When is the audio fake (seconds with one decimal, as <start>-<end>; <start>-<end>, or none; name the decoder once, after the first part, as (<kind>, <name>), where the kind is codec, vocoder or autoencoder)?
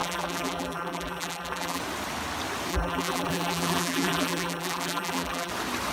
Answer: 0.0-1.8 (vocoder, BigVGAN v2); 2.7-5.5